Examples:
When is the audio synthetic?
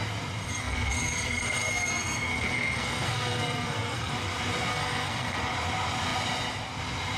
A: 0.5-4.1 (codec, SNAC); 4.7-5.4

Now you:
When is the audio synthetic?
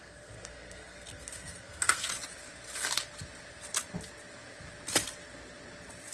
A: 0.0-2.1 (codec, SNAC)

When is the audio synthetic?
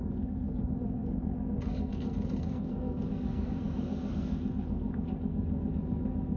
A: 0.0-6.4 (codec, SNAC)